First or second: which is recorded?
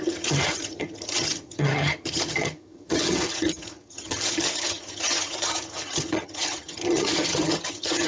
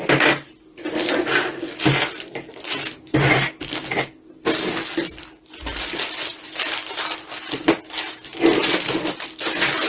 second